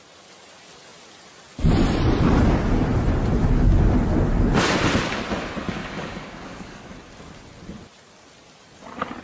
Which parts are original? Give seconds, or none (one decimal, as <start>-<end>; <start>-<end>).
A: 0.0-5.8; 6.9-9.2